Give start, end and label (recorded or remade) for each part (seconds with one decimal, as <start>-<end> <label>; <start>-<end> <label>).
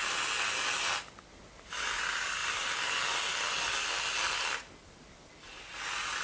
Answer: 0.0-6.2 recorded